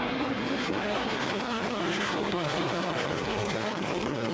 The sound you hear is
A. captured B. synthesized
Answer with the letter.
B